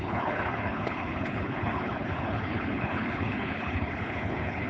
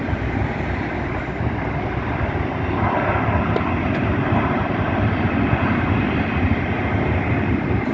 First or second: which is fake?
first